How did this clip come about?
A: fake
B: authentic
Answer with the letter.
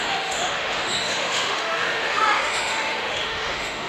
A